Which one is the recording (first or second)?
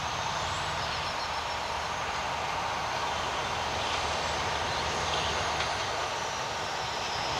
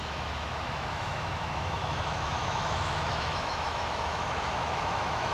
first